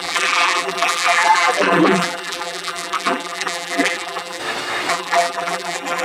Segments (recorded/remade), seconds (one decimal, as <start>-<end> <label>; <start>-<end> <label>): 0.0-4.4 remade; 4.4-4.9 recorded; 4.9-6.0 remade